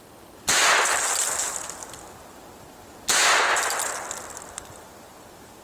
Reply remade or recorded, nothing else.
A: recorded